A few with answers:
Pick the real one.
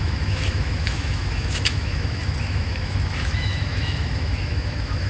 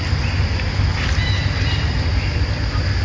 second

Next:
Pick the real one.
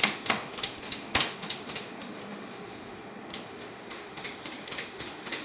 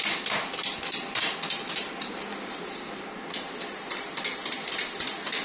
second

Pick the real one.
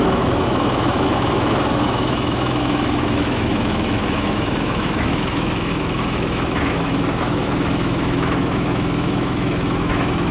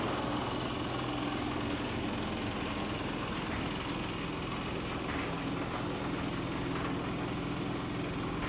second